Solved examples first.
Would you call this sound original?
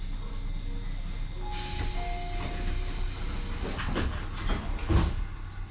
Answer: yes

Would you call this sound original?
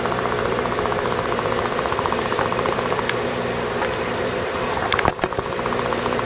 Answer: no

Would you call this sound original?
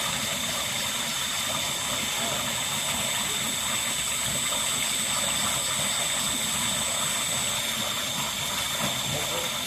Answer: yes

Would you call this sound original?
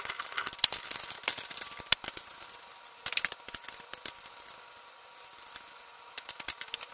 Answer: yes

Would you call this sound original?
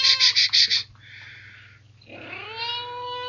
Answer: yes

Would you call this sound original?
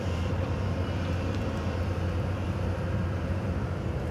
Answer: no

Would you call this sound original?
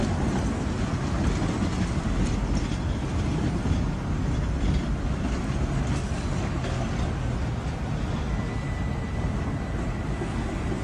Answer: yes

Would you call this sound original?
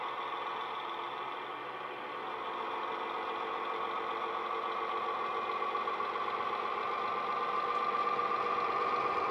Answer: yes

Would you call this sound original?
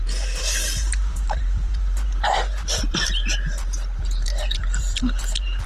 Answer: no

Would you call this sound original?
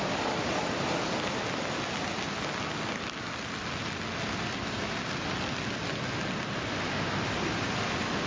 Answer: yes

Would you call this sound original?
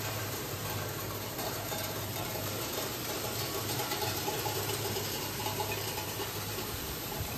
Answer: no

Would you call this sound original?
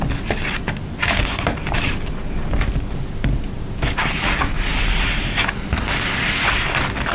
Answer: yes